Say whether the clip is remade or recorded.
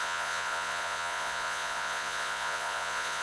remade